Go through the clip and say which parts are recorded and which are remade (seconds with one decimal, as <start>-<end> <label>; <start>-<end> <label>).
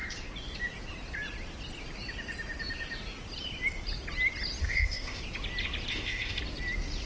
0.0-4.6 recorded; 4.6-5.2 remade; 5.2-5.9 recorded; 5.9-6.4 remade; 6.4-7.1 recorded